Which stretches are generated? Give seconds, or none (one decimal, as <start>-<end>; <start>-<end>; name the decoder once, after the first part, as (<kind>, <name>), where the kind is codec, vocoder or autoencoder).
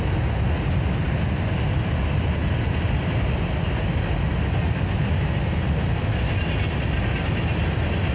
none